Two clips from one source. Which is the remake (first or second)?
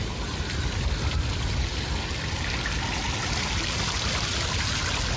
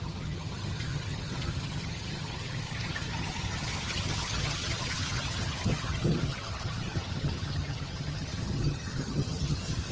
second